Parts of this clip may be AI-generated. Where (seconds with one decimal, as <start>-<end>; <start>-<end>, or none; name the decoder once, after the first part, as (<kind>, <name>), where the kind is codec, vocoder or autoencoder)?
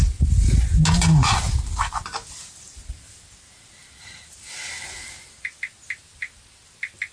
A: none